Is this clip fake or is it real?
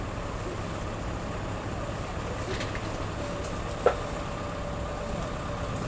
real